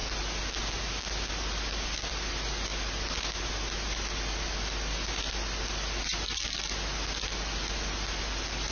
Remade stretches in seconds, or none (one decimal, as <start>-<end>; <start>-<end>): none